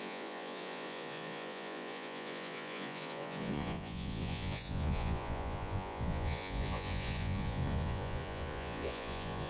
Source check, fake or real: fake